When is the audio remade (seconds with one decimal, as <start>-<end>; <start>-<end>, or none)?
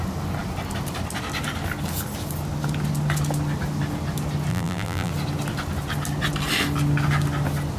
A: 4.5-5.1